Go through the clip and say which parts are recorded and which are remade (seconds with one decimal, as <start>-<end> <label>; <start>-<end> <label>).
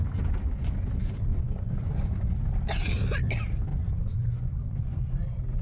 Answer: 0.0-1.3 recorded; 1.3-2.4 remade; 2.4-3.7 recorded; 3.7-5.0 remade; 5.0-5.6 recorded